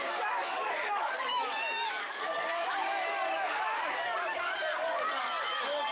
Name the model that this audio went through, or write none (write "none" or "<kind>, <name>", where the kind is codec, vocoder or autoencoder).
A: codec, DAC